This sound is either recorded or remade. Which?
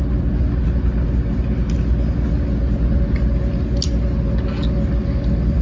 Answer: recorded